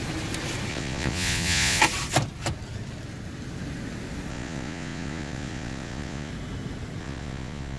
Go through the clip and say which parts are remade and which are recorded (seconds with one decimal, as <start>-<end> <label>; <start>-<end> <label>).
0.0-0.7 recorded; 0.7-1.8 remade; 1.8-4.3 recorded; 4.3-6.3 remade; 6.3-7.0 recorded; 7.0-7.8 remade

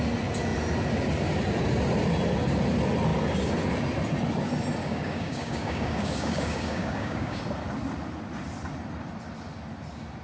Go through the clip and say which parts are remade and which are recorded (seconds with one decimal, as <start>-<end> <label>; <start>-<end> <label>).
0.0-4.8 recorded; 4.8-7.4 remade; 7.4-10.2 recorded